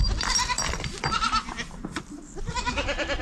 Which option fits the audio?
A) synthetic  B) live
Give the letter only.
A